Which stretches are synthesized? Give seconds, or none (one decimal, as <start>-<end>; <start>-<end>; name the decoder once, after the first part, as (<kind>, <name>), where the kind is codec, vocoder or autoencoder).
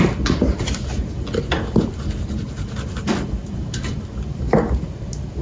4.3-4.8 (vocoder, BigVGAN v2)